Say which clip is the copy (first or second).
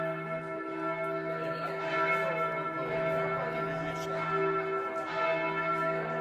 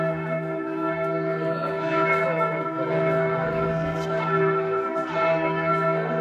second